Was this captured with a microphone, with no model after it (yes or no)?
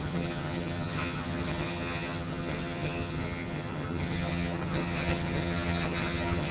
no